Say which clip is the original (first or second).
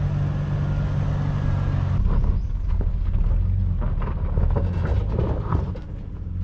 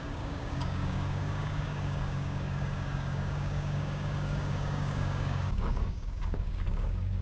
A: first